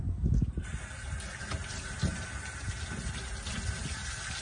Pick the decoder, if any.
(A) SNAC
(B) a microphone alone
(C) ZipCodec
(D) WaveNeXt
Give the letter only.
B